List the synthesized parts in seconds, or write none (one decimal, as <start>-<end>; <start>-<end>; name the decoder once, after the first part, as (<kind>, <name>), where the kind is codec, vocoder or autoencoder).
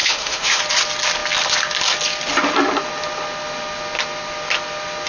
0.0-0.6 (autoencoder, DAC-VAE)